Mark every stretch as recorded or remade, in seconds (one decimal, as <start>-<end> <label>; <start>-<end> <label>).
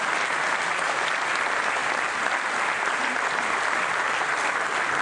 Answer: 0.0-5.0 recorded